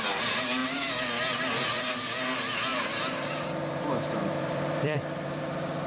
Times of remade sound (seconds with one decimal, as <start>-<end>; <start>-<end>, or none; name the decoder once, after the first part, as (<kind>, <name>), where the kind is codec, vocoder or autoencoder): 0.6-1.9 (vocoder, BigVGAN v2); 2.7-5.4